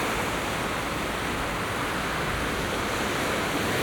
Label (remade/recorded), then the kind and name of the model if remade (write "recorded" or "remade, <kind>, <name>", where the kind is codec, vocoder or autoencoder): recorded